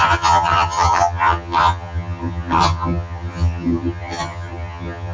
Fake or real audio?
fake